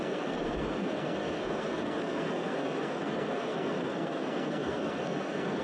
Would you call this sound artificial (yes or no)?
yes